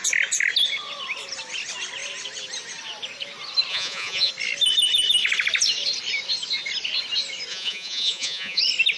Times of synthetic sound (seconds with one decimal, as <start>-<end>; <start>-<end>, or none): 3.7-4.3; 7.5-8.6